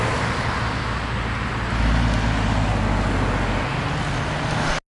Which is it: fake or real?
real